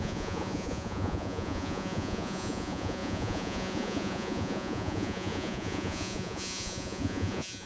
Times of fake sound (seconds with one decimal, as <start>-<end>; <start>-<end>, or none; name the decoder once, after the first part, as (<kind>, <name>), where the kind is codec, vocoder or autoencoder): 0.0-7.7 (vocoder, Vocos)